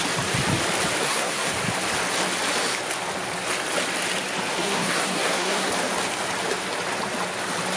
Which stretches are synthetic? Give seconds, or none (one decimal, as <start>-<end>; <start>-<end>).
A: 1.0-1.5; 4.5-5.7